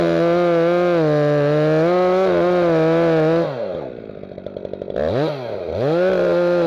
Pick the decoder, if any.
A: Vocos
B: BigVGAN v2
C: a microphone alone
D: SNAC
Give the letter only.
C